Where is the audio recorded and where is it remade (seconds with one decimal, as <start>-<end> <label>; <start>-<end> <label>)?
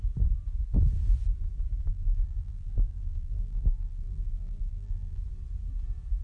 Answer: 0.0-1.9 recorded; 1.9-5.2 remade; 5.2-6.2 recorded